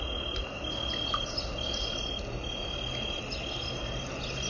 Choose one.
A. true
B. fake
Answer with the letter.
A